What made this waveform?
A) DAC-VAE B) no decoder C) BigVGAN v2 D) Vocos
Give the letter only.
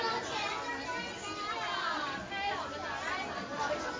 B